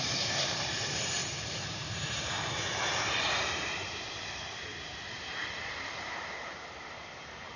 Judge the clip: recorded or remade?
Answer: remade